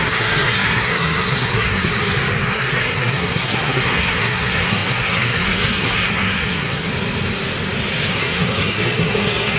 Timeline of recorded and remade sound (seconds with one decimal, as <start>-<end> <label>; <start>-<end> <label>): 0.0-1.9 remade; 1.9-2.5 recorded; 2.5-6.9 remade; 6.9-8.1 recorded; 8.1-9.6 remade